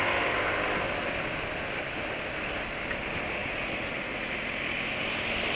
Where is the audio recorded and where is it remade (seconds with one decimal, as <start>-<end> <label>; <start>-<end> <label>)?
0.0-5.6 recorded